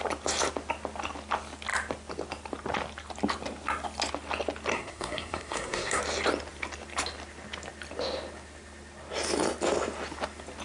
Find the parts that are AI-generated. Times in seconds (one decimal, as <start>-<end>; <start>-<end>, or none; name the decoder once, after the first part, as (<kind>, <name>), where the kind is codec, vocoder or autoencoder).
4.7-6.0 (codec, SNAC)